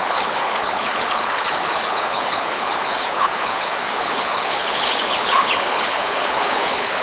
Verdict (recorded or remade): remade